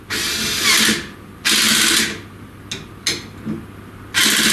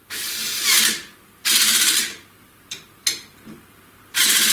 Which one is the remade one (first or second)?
second